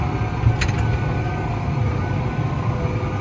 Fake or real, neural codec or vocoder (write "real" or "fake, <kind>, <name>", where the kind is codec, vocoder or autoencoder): real